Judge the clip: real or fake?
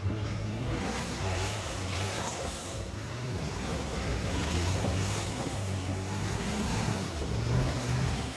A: fake